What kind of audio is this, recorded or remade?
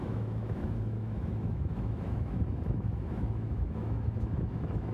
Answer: remade